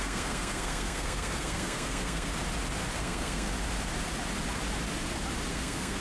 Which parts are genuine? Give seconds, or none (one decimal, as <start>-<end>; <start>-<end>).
2.3-3.0; 3.5-5.5